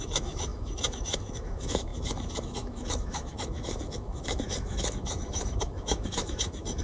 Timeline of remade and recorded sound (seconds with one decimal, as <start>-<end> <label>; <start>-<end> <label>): 0.0-6.8 remade